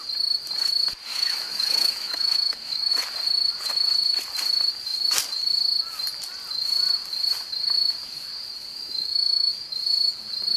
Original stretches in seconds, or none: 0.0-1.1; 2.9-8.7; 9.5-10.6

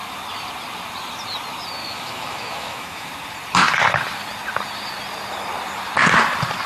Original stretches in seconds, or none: 0.0-1.8; 3.1-6.7

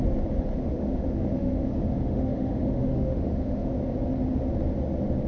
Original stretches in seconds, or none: 0.0-0.5; 3.7-5.3

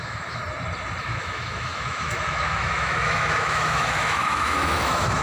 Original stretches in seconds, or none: 0.4-1.0

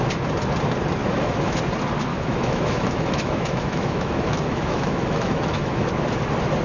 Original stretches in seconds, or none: 0.0-1.0; 1.6-2.1; 5.9-6.6

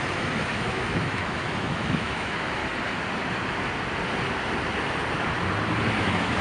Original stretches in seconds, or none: 2.6-6.0

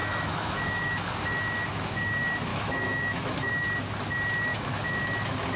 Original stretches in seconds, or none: 1.1-2.5; 3.5-4.5; 5.0-5.6

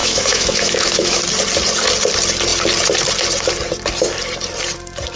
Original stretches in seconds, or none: 1.2-5.2